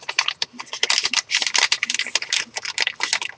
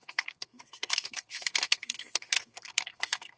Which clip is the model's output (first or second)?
second